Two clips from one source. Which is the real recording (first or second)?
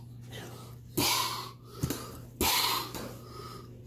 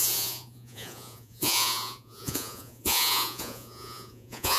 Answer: first